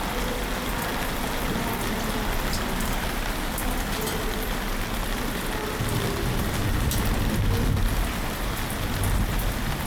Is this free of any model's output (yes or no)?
yes